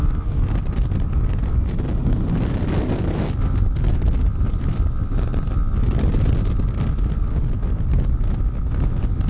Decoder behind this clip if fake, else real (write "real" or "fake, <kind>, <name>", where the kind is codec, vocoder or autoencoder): real